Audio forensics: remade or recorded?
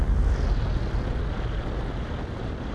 recorded